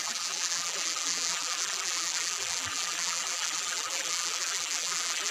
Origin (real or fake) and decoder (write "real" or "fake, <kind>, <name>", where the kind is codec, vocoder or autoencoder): fake, vocoder, BigVGAN v2